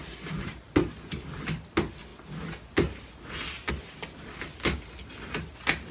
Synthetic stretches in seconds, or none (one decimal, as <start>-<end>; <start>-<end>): none